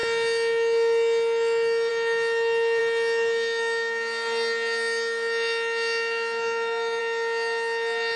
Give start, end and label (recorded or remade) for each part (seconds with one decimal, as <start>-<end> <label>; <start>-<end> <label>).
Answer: 0.0-8.2 recorded